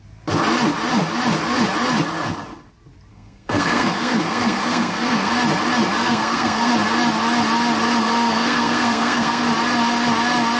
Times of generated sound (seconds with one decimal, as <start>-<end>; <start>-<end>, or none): 3.1-5.3; 6.0-6.7; 8.0-9.4